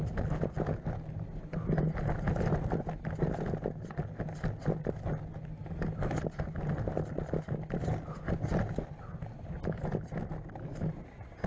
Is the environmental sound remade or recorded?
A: recorded